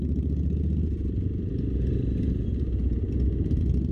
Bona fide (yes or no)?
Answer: yes